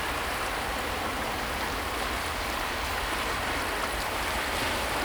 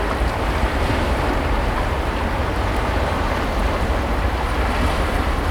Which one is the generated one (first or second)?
second